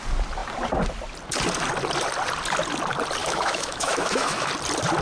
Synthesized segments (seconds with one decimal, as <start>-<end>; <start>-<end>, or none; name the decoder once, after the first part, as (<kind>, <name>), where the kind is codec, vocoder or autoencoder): 3.2-4.5 (autoencoder, DAC-VAE)